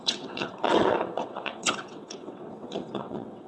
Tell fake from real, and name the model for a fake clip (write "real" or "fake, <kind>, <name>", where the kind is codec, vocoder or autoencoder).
fake, vocoder, WaveNeXt